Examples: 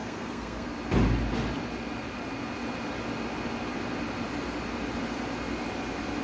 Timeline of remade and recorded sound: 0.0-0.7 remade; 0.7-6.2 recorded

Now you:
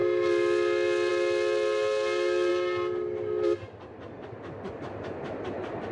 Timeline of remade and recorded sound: 0.0-5.9 recorded